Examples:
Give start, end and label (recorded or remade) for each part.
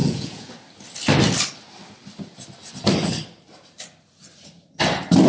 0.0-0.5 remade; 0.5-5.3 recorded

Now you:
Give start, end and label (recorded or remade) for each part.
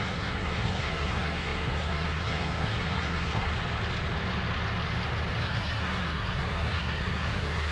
0.0-3.5 remade; 3.5-5.4 recorded; 5.4-7.7 remade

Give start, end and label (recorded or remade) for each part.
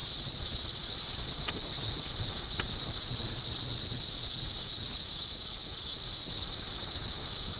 0.0-1.4 remade; 1.4-7.6 recorded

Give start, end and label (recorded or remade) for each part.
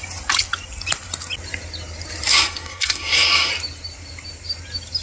0.0-2.3 recorded; 2.3-3.5 remade; 3.5-5.0 recorded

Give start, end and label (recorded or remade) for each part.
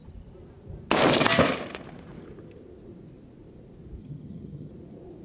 0.0-4.0 recorded; 4.0-4.7 remade; 4.7-5.2 recorded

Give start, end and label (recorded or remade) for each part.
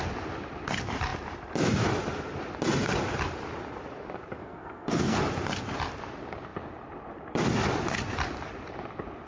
0.0-4.4 recorded; 4.4-5.2 remade; 5.2-9.3 recorded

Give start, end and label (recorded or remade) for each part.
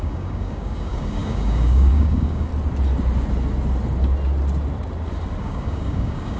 0.0-2.5 remade; 2.5-5.4 recorded; 5.4-6.4 remade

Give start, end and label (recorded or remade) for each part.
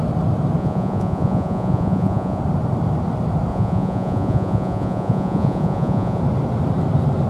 0.0-0.6 recorded; 0.6-2.4 remade; 2.4-3.5 recorded; 3.5-6.2 remade; 6.2-7.3 recorded